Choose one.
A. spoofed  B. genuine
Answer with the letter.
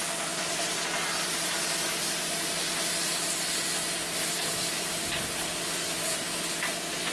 B